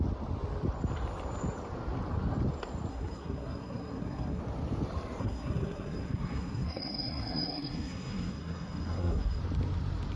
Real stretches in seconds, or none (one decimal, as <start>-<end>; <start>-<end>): 0.0-2.9; 4.4-5.2; 9.4-10.2

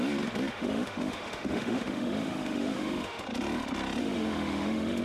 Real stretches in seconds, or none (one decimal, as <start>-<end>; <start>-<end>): 0.0-0.5; 3.2-4.0

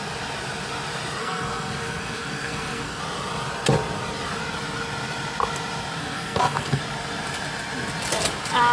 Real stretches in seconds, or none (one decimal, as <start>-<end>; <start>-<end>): 0.0-1.2; 3.0-6.0; 6.8-8.7

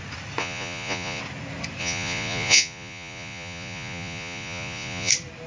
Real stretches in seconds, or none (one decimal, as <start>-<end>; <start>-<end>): 0.0-0.4; 1.2-1.8; 5.1-5.5

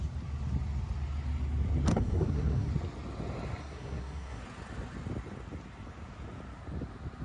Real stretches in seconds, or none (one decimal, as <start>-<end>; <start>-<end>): 0.0-1.9; 2.7-3.6; 4.4-7.2

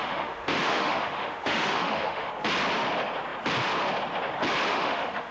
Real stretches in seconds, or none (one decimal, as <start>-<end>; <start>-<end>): 2.3-4.7

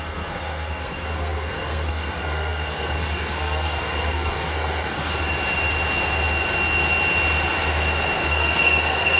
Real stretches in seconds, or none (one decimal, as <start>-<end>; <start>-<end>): 5.1-8.3

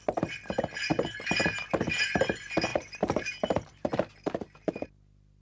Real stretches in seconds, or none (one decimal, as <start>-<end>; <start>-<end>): 0.0-0.9; 2.2-2.7